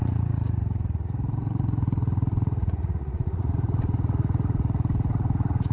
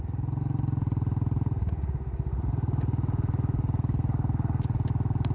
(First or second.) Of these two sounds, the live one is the second